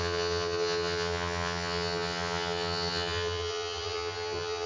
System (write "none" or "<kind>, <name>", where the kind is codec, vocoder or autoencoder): vocoder, HiFi-GAN